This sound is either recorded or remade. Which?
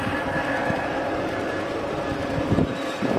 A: remade